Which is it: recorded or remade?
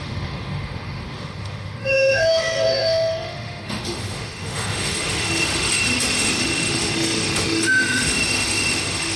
remade